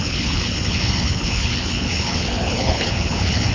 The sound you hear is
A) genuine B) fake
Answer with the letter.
B